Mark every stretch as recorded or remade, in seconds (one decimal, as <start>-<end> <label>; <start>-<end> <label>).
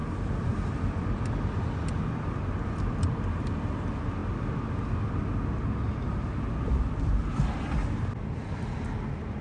0.0-9.4 recorded